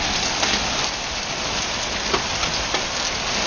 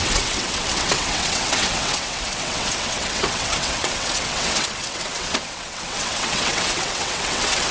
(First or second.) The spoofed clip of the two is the second